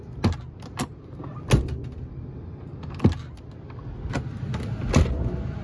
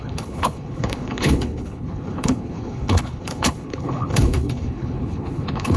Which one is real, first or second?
first